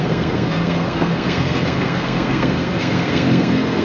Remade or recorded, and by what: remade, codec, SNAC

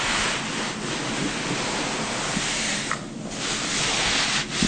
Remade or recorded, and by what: recorded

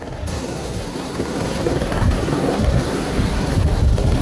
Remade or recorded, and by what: remade, codec, SNAC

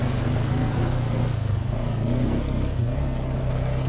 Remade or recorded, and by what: remade, codec, SNAC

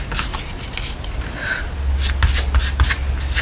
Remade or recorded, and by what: recorded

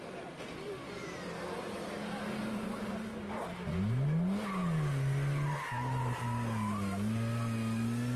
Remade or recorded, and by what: recorded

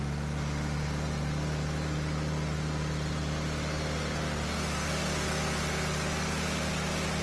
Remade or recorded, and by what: recorded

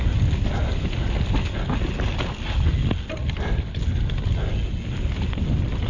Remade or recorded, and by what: recorded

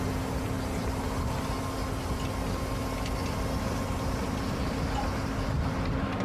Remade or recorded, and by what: recorded